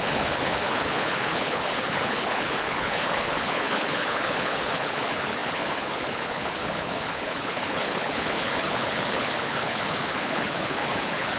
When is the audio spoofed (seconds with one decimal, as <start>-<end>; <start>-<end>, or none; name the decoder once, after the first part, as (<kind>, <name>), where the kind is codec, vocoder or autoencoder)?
0.0-11.4 (codec, HILCodec)